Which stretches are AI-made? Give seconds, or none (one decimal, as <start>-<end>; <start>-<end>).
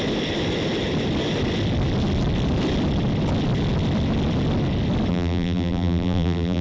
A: 5.1-6.6